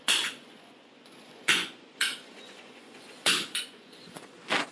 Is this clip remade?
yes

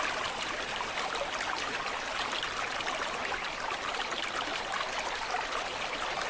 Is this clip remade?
no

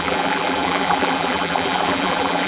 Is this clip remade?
yes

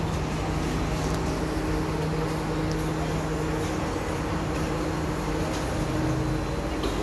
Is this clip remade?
no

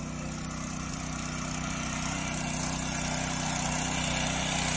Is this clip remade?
no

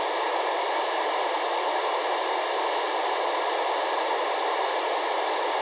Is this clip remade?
no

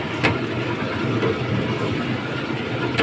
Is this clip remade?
no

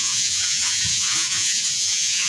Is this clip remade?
yes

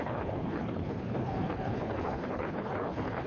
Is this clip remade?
yes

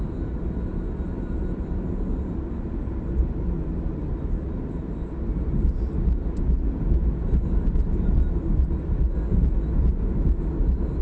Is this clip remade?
no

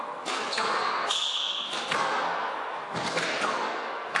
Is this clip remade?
yes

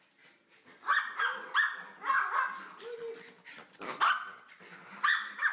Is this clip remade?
no